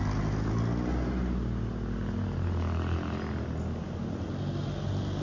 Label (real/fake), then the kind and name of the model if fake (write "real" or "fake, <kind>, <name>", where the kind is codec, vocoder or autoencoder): real